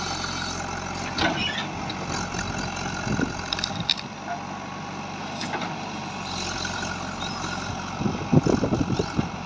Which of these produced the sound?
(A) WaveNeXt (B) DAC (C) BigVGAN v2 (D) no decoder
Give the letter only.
D